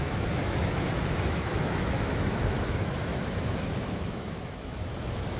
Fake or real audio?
fake